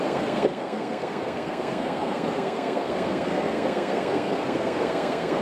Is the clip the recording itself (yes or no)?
no